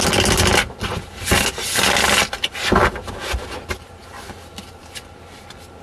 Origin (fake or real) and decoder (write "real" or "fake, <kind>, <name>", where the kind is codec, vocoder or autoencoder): real